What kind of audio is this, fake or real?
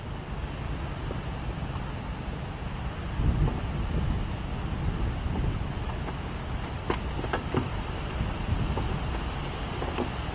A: real